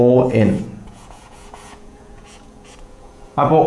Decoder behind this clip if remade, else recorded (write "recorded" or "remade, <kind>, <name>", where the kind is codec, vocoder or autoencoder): remade, vocoder, Vocos